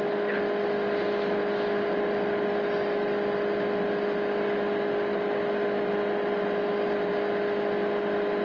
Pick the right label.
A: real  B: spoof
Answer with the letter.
A